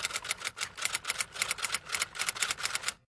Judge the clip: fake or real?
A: fake